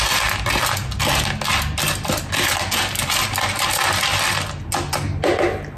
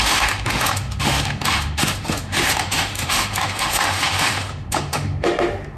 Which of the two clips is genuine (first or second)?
first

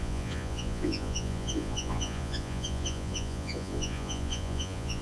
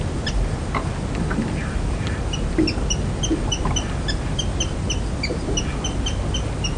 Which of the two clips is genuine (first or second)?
second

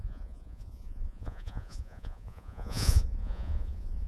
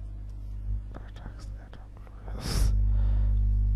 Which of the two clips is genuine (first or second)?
second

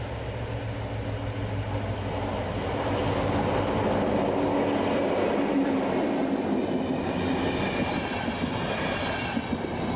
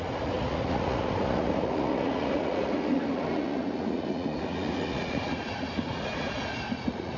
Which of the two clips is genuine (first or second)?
first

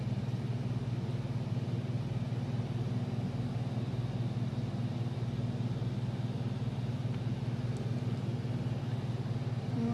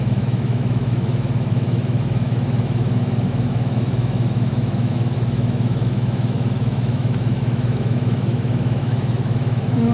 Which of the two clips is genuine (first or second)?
first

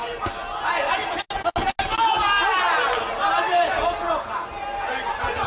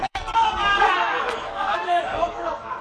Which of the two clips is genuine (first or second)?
first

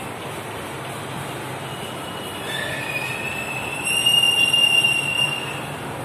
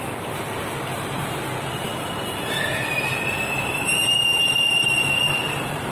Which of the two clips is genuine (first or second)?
first